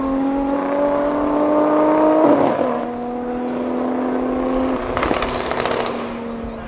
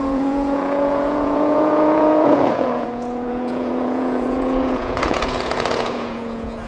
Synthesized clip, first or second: second